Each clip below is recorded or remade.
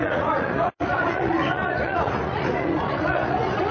remade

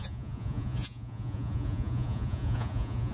remade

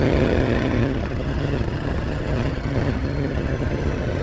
remade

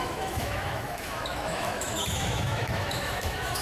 remade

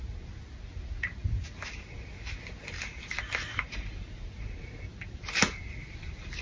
recorded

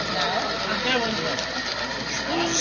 recorded